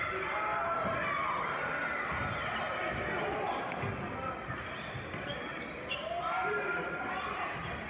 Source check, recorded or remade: recorded